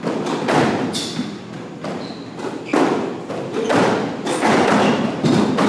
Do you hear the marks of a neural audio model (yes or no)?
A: no